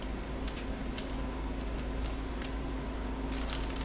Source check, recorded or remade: recorded